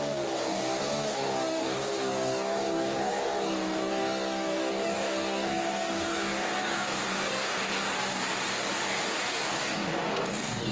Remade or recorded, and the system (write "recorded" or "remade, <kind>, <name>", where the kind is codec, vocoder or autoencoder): remade, codec, DAC